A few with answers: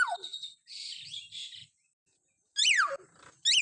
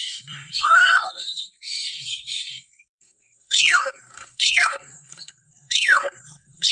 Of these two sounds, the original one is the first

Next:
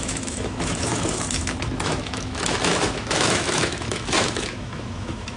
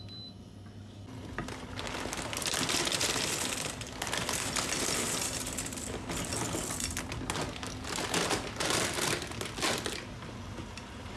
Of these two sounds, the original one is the second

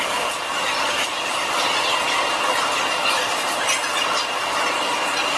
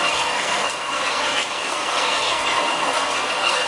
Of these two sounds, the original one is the first